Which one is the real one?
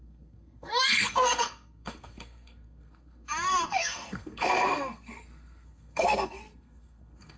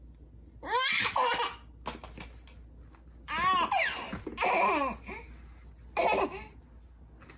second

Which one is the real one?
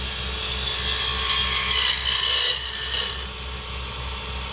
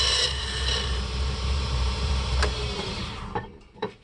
first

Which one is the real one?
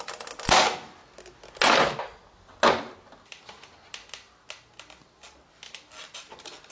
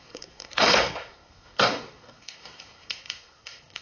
first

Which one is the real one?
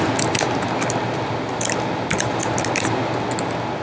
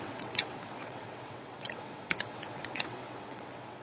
first